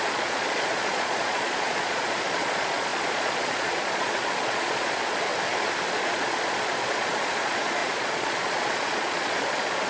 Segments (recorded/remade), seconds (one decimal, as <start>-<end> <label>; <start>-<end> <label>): 0.0-5.3 remade; 5.3-5.9 recorded; 5.9-9.9 remade